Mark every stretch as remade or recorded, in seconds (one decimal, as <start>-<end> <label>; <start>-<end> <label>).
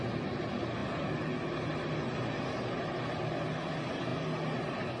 0.0-5.0 recorded